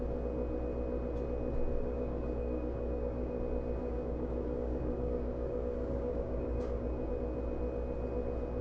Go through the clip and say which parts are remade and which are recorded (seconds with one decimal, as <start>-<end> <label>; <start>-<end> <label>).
0.0-1.7 recorded; 1.7-3.4 remade; 3.4-3.8 recorded; 3.8-7.1 remade; 7.1-8.6 recorded